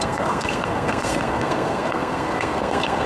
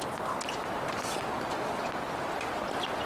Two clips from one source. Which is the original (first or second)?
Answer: second